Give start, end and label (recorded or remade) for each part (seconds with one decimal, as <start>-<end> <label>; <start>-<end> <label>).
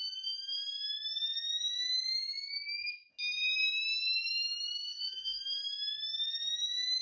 0.0-4.9 recorded; 4.9-5.4 remade; 5.4-7.0 recorded